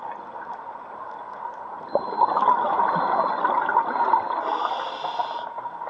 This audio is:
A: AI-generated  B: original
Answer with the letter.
B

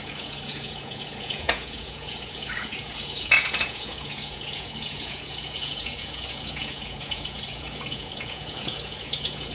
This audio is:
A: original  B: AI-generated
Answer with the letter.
B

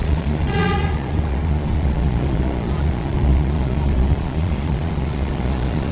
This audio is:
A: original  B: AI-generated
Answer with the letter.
B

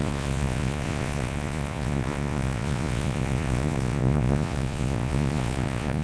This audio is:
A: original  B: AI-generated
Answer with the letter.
B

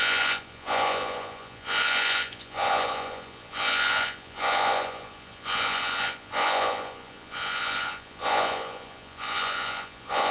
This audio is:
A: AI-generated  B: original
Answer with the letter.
A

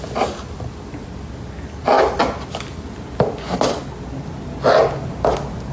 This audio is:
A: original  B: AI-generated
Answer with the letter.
A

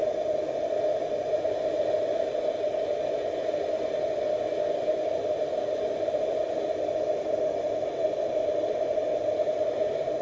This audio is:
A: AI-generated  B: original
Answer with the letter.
B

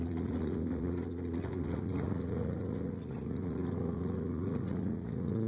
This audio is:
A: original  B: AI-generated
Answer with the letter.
B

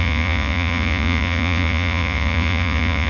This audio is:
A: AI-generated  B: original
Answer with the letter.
A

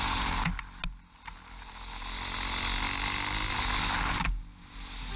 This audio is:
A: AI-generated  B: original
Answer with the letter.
B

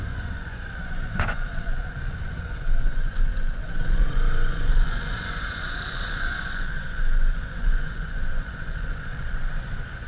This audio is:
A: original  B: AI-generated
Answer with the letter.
B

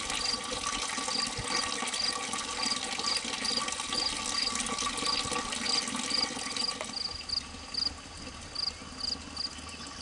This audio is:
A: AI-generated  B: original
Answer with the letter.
B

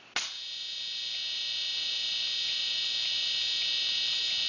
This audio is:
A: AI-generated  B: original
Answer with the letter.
B